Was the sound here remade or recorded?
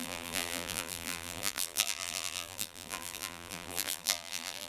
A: remade